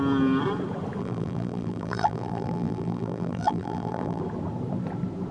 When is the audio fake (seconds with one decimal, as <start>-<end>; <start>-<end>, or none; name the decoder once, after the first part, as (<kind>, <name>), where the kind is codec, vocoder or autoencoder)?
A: 1.0-4.2 (vocoder, BigVGAN v2)